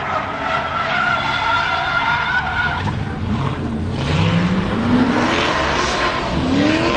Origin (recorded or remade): recorded